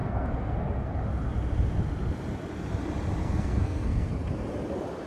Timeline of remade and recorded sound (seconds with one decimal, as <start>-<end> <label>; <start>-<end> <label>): 0.0-0.9 remade; 0.9-3.2 recorded; 3.2-4.1 remade; 4.1-5.1 recorded